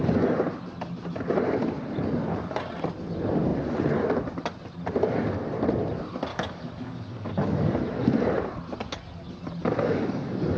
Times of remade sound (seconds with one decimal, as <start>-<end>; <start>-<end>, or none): 6.3-7.8; 9.6-10.6